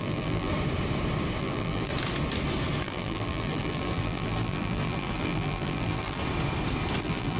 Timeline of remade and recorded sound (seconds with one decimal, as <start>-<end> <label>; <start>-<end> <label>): 0.0-0.5 remade; 0.5-1.4 recorded; 1.4-1.9 remade; 1.9-2.8 recorded; 2.8-6.2 remade; 6.2-7.0 recorded; 7.0-7.4 remade

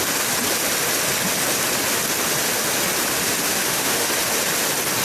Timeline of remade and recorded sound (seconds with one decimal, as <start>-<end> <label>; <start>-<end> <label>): 0.0-3.5 recorded; 3.5-4.1 remade; 4.1-5.0 recorded

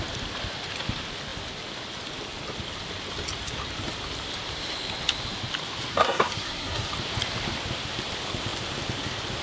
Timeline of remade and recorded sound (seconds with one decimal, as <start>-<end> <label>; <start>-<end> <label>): 0.0-5.9 recorded; 5.9-6.9 remade; 6.9-9.4 recorded

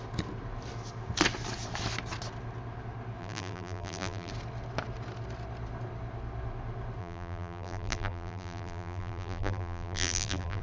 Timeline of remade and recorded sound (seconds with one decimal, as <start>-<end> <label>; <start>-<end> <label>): 0.0-3.2 recorded; 3.2-4.3 remade; 4.3-7.0 recorded; 7.0-10.6 remade